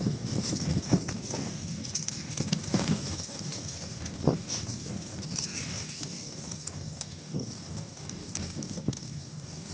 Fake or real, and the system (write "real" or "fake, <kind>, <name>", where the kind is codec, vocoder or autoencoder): fake, codec, DAC